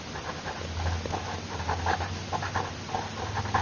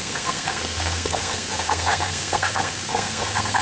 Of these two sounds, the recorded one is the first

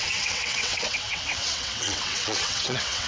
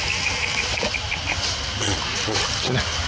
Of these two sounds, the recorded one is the second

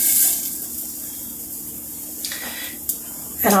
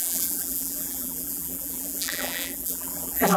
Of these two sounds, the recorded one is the first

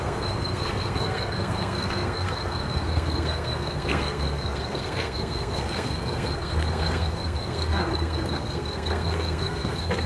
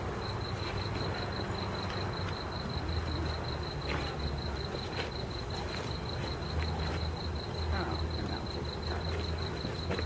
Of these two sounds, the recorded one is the second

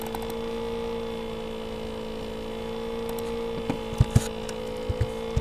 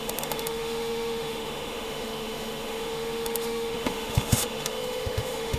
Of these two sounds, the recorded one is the first